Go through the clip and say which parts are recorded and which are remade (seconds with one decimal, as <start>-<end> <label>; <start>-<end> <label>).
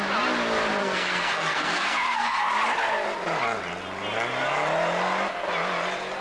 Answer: 0.0-0.8 recorded; 0.8-2.5 remade; 2.5-6.2 recorded